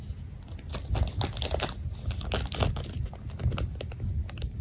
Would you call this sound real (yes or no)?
yes